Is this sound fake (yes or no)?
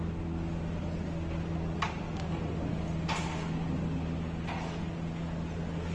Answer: no